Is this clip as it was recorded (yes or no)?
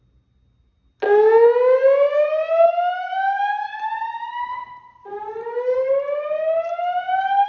yes